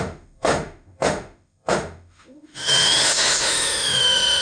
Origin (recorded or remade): remade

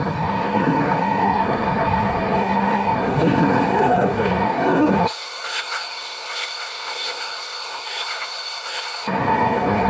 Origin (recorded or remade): remade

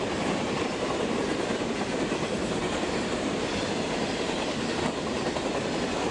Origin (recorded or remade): remade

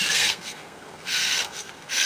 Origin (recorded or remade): remade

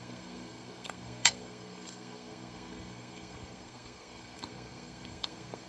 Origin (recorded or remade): remade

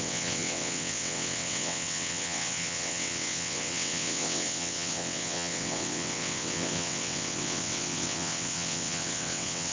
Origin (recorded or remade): remade